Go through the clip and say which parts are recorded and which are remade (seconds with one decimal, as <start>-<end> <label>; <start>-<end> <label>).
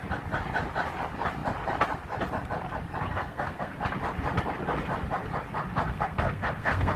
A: 0.0-3.1 recorded; 3.1-3.8 remade; 3.8-5.9 recorded; 5.9-7.0 remade